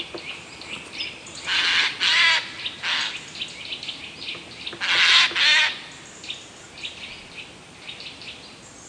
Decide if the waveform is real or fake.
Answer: real